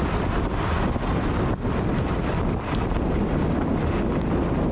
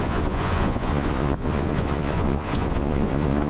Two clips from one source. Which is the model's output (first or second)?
second